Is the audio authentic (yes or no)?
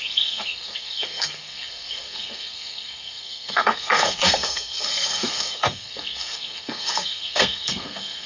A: no